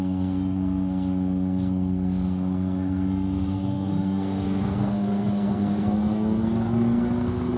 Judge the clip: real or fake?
fake